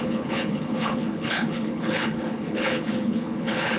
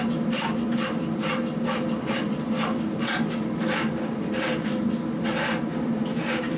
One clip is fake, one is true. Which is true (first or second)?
second